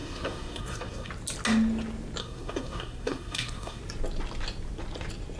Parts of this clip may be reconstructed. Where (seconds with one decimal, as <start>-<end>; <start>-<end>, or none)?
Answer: 0.0-1.1; 2.2-3.8